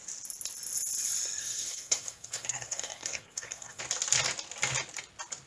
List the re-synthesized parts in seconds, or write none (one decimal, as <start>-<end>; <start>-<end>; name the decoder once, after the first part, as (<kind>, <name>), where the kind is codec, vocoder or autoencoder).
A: 1.4-3.8 (codec, SNAC)